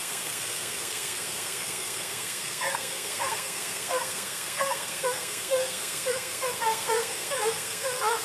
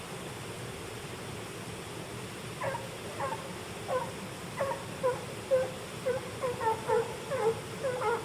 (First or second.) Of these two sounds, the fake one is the first